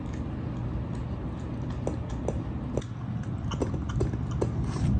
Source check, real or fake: real